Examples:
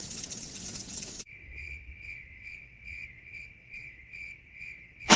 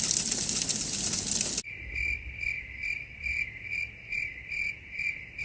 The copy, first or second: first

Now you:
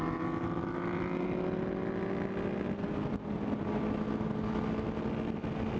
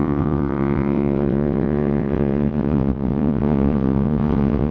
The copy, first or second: second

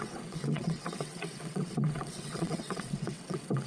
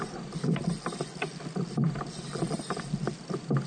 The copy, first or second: first